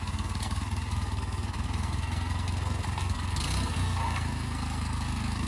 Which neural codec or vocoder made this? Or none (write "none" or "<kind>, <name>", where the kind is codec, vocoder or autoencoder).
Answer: codec, SNAC